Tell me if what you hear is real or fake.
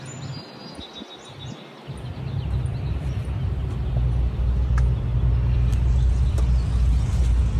real